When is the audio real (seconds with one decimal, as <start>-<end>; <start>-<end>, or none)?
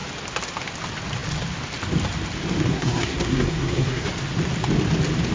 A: 0.0-2.7; 4.1-5.3